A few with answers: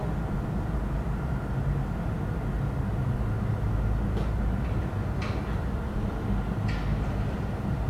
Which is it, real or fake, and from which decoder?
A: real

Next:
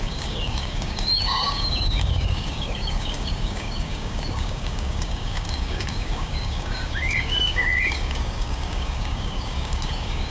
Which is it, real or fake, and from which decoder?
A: fake, codec, DAC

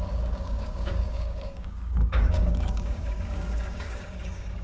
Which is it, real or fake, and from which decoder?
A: fake, codec, DAC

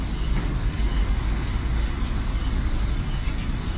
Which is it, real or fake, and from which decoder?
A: fake, codec, DAC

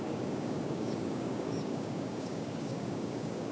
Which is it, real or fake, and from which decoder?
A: fake, codec, DAC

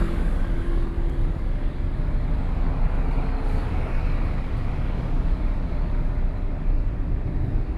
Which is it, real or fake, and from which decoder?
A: fake, codec, DAC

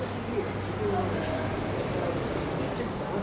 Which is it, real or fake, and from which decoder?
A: real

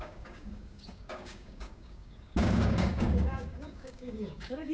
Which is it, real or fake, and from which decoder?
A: fake, codec, DAC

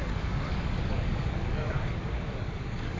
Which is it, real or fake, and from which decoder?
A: fake, codec, DAC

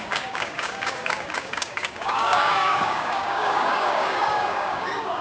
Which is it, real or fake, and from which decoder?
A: fake, codec, DAC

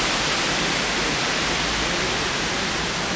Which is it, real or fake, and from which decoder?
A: real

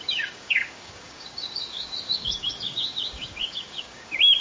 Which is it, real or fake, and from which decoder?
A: fake, codec, DAC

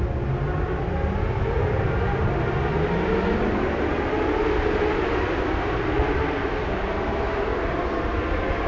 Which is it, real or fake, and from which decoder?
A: real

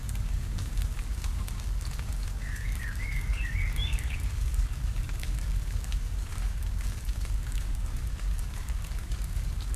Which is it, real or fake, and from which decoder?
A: fake, codec, DAC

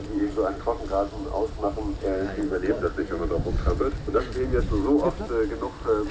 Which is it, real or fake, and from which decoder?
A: real